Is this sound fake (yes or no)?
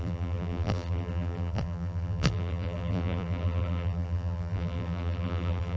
yes